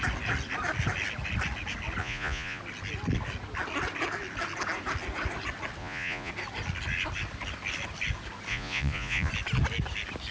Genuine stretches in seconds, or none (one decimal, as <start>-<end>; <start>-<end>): 0.0-2.0; 2.6-5.8; 6.3-8.5; 9.3-10.3